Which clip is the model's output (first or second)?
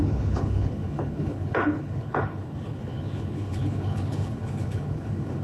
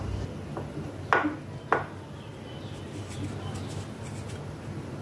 first